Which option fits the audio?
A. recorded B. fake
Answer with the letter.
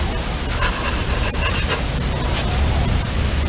B